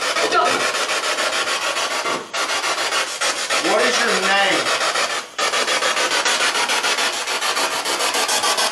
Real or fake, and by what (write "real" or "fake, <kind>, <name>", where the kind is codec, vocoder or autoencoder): real